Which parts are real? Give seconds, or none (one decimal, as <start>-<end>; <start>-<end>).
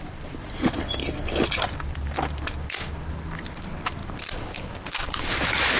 0.0-5.8